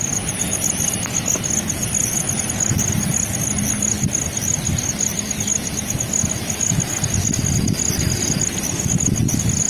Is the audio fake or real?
real